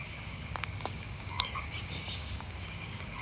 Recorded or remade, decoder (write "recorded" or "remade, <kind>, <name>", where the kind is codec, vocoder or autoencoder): remade, codec, DAC